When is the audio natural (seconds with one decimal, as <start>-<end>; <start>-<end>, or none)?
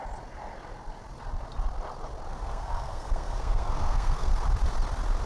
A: 0.0-2.3; 4.3-5.3